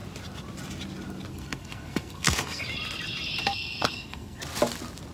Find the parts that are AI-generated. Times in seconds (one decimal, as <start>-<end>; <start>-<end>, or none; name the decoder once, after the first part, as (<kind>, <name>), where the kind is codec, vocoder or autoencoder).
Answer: 1.3-2.6 (codec, SNAC); 3.4-4.4